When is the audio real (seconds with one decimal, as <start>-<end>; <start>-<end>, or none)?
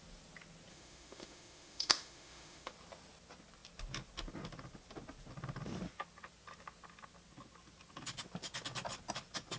0.0-0.7; 2.7-9.6